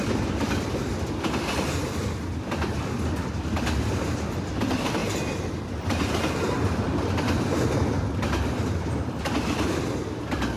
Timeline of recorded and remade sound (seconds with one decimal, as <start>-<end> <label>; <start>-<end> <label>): 0.0-10.6 recorded